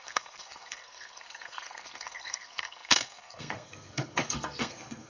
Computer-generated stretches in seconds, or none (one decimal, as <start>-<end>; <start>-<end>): 0.0-5.1